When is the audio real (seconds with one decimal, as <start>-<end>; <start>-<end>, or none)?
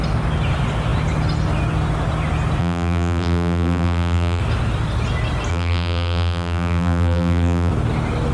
0.0-2.6; 4.4-5.5; 7.7-8.3